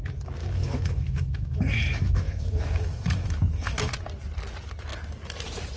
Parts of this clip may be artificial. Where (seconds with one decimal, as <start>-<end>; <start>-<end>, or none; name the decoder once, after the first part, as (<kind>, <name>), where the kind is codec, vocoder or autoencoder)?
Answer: 0.4-3.9 (autoencoder, DAC-VAE)